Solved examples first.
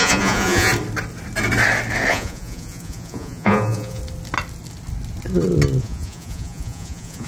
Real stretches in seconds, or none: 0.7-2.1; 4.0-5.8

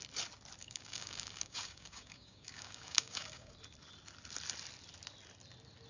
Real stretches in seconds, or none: 0.0-0.6; 3.5-5.9

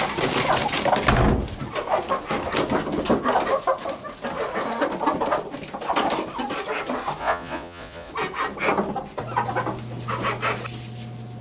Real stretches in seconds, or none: 0.0-7.2; 8.1-11.4

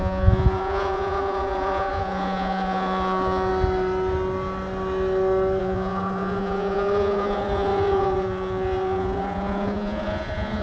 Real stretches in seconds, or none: 3.5-5.6

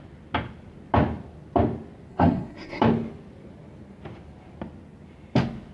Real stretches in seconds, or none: 0.0-2.1; 2.8-5.7

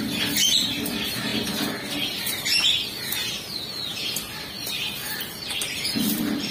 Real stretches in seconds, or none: 3.2-3.7

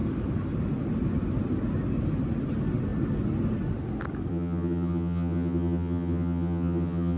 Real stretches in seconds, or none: 0.0-4.3

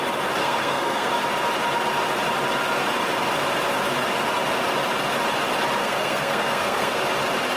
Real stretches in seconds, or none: 0.0-0.4; 1.1-5.8; 7.0-7.6